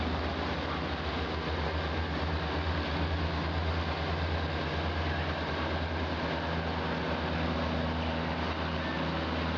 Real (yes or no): yes